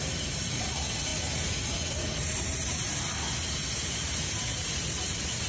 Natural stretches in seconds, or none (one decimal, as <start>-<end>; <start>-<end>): 1.1-3.7